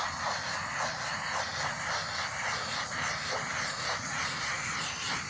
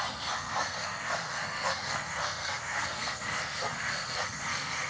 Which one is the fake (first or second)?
second